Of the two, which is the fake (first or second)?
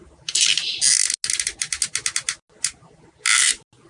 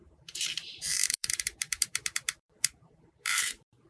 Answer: second